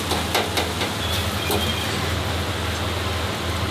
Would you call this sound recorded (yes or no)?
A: yes